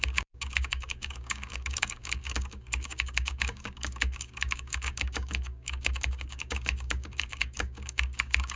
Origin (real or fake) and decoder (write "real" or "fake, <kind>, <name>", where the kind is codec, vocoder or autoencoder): fake, codec, DAC